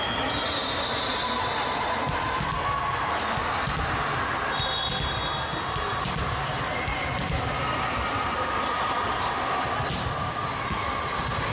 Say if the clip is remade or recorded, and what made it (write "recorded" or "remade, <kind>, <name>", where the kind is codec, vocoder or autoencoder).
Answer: recorded